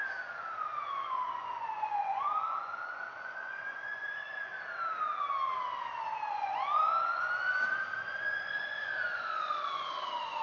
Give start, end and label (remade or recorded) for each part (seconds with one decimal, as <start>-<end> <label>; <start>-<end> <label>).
0.0-4.5 remade; 4.5-6.3 recorded; 6.3-10.4 remade